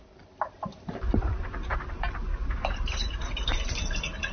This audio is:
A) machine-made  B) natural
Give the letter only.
A